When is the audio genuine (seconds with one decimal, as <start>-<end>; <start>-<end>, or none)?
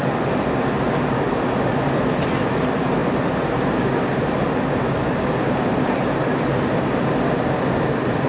0.0-8.3